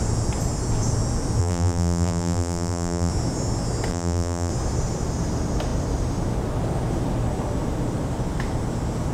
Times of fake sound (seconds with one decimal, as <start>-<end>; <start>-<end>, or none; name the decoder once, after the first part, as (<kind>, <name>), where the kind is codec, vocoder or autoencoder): 1.4-3.1 (vocoder, BigVGAN v2); 3.9-4.5